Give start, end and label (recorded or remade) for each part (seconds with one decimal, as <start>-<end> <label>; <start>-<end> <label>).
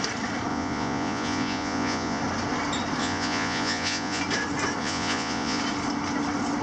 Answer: 0.0-0.5 recorded; 0.5-2.2 remade; 2.2-3.0 recorded; 3.0-4.2 remade; 4.2-4.8 recorded; 4.8-5.6 remade; 5.6-6.6 recorded